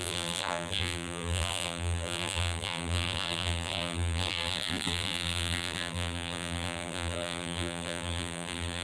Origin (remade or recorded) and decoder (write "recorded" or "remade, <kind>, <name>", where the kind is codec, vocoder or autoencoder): remade, vocoder, BigVGAN v2